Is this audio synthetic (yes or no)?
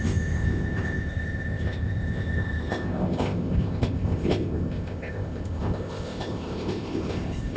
yes